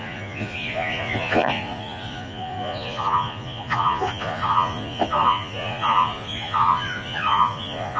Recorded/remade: remade